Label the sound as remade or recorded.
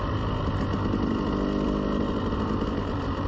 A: recorded